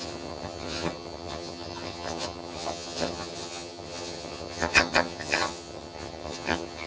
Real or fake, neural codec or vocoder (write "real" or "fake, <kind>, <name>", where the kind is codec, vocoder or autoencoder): fake, vocoder, HiFi-GAN